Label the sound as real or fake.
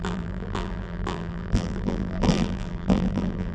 fake